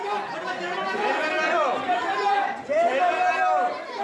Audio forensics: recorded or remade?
recorded